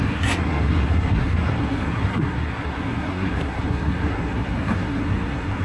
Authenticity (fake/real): fake